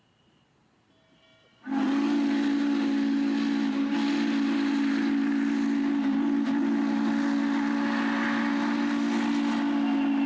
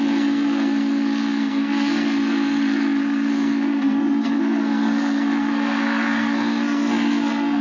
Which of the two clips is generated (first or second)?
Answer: second